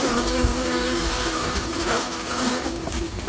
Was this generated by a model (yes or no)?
yes